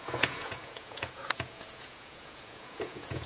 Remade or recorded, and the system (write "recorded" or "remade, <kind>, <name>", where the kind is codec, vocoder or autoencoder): remade, vocoder, Vocos